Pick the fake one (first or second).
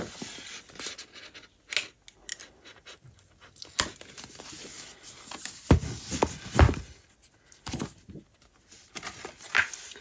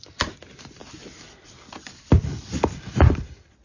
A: second